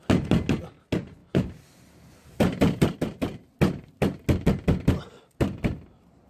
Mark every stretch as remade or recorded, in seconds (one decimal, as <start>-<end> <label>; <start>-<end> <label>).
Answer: 0.0-1.2 recorded; 1.2-3.5 remade; 3.5-6.3 recorded